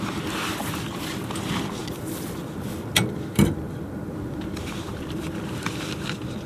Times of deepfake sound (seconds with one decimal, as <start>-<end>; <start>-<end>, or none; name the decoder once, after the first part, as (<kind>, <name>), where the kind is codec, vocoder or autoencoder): 0.0-1.8 (vocoder, BigVGAN v2); 2.4-6.5